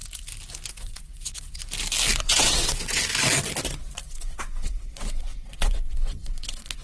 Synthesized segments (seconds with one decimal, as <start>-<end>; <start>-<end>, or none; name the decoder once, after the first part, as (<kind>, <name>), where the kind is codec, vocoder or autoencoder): 0.7-1.6 (vocoder, WaveNeXt); 2.2-3.0; 3.8-6.8